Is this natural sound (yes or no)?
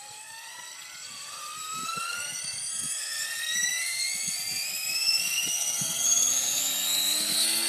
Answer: no